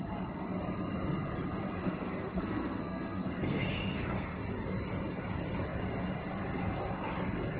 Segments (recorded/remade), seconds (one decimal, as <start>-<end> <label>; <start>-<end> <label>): 0.0-1.8 recorded; 1.8-4.4 remade; 4.4-7.6 recorded